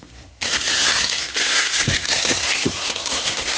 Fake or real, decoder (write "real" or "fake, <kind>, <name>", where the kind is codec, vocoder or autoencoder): fake, codec, SNAC